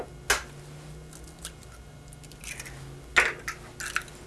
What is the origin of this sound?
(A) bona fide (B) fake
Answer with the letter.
A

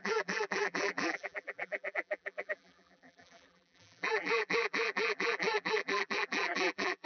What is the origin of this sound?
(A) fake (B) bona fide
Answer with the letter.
A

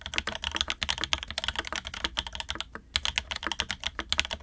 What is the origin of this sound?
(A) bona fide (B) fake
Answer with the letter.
A